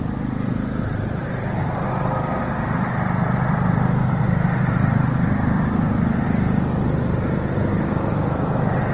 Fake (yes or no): no